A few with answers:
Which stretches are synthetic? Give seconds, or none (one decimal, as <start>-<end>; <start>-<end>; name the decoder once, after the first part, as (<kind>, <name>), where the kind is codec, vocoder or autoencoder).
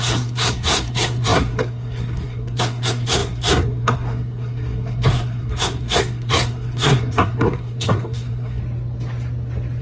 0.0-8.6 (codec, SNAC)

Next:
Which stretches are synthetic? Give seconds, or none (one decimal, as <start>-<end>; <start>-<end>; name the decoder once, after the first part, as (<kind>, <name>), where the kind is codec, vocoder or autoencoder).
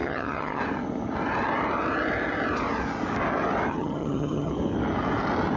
0.0-0.6 (vocoder, HiFi-GAN); 3.7-4.5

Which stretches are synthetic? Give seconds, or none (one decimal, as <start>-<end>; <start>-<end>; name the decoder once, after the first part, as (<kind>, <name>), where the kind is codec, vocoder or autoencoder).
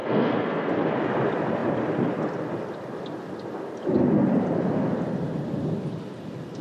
0.0-0.7 (codec, SNAC)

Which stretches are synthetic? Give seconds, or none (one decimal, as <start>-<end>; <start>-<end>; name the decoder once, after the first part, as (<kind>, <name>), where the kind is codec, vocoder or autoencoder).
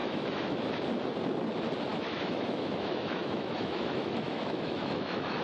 0.0-0.6 (autoencoder, DAC-VAE); 1.9-5.4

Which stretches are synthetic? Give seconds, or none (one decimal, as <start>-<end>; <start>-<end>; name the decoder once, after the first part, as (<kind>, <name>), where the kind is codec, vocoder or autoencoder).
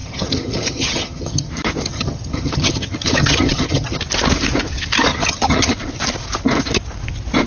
0.0-1.5 (vocoder, HiFi-GAN); 1.9-4.0; 5.1-5.7